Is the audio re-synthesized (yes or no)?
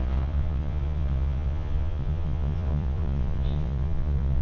yes